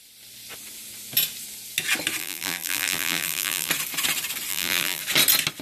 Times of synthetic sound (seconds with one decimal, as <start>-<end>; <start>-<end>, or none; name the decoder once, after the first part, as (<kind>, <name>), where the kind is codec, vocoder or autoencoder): 2.2-3.7 (vocoder, BigVGAN v2); 4.5-5.0